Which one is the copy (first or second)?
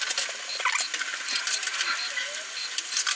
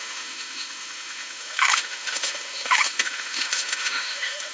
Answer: second